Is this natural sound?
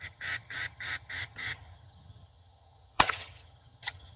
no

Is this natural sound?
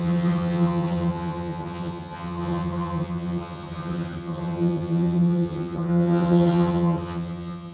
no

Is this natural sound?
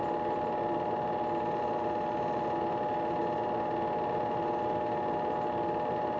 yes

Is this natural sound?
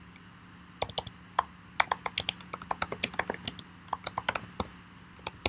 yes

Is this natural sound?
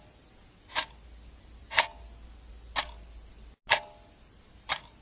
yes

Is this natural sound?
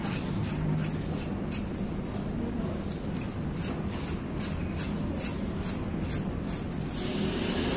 yes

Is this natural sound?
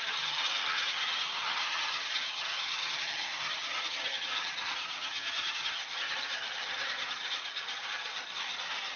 no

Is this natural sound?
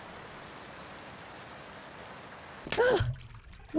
yes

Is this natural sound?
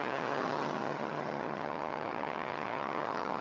no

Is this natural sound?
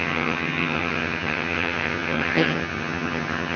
no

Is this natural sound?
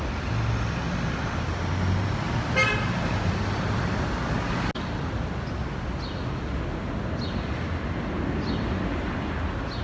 yes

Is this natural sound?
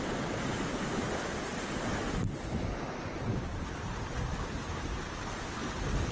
yes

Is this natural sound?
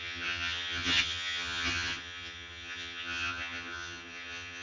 no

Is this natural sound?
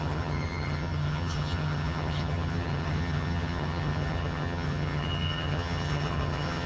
no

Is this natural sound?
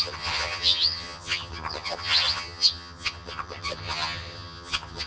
no